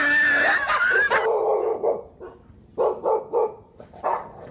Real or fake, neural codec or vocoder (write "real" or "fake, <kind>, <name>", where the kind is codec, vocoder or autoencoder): real